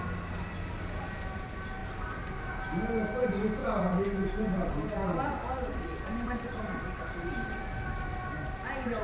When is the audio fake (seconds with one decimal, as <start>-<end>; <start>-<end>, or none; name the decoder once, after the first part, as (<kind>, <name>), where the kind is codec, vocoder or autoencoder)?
1.8-2.4 (vocoder, BigVGAN v2); 3.6-7.6